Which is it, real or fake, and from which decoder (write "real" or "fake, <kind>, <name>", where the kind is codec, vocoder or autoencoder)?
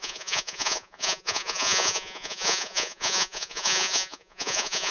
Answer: fake, vocoder, Vocos